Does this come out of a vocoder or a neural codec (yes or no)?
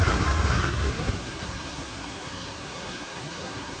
yes